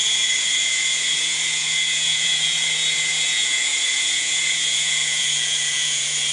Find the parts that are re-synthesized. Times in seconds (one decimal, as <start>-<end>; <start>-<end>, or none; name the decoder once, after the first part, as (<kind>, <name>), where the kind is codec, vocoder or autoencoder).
0.0-6.3 (vocoder, Vocos)

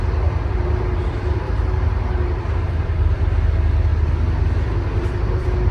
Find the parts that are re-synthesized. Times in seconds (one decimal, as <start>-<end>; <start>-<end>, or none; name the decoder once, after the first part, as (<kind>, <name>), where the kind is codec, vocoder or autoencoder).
0.0-3.9 (vocoder, BigVGAN v2); 4.4-5.7

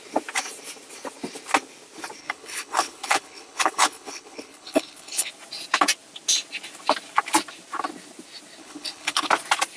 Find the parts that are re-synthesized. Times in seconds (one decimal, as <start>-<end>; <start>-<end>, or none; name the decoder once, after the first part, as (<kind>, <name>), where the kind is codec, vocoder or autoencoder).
2.2-5.3 (codec, HILCodec); 8.6-9.3

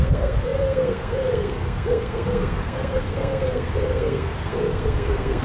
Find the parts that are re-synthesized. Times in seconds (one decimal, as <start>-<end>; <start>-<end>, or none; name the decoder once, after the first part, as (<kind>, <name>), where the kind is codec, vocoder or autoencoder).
0.0-5.4 (codec, SNAC)